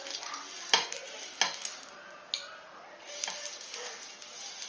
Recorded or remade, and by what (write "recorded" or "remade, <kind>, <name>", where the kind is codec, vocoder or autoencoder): recorded